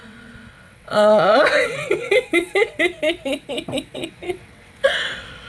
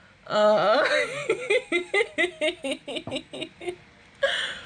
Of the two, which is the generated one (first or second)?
first